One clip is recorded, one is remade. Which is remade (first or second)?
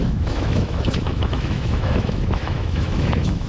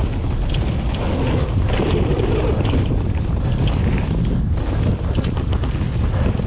first